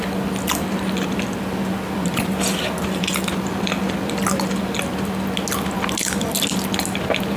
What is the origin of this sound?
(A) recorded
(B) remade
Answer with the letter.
A